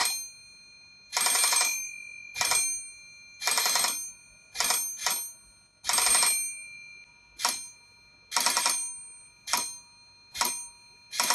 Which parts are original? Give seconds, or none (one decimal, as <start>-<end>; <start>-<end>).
0.0-11.3